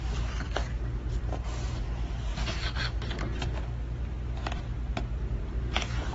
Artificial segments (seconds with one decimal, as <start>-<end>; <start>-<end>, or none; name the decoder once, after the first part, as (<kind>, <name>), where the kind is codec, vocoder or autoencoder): none